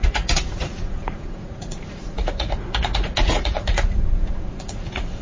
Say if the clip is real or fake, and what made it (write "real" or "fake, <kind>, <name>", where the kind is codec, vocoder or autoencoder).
fake, vocoder, Vocos